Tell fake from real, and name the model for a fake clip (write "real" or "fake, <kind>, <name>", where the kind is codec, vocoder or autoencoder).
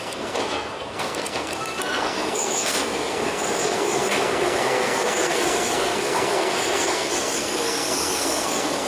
fake, codec, SNAC